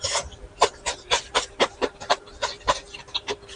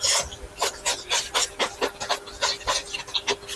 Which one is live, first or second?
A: second